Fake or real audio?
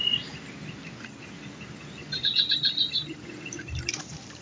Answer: real